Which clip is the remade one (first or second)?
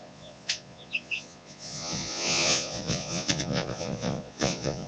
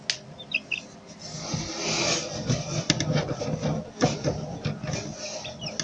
first